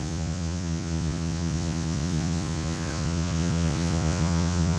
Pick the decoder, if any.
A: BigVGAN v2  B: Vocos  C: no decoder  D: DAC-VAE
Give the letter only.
B